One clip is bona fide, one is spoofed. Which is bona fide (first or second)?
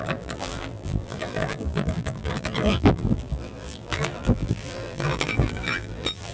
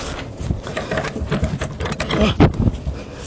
second